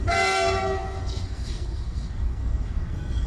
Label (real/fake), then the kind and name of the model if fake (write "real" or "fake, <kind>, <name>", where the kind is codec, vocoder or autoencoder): fake, codec, SNAC